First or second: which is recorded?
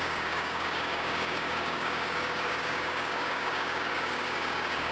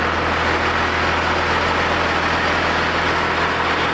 second